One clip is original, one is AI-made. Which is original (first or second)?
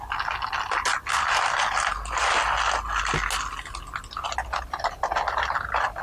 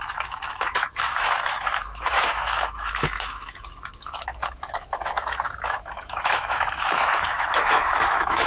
first